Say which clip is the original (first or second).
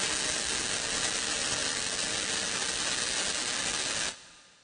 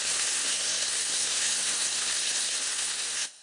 first